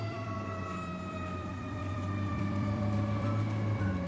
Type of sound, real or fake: fake